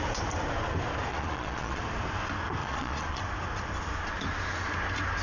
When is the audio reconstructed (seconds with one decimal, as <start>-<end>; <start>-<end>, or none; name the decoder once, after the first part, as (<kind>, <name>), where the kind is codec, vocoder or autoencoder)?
1.1-1.8 (vocoder, Vocos); 2.6-3.2